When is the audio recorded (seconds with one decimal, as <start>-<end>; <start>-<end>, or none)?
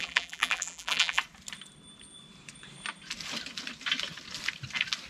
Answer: 1.2-5.1